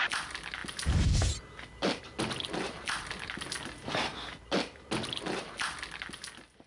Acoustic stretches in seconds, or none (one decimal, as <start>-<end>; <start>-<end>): 0.0-6.7